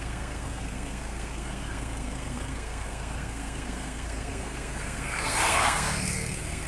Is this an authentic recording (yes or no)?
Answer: no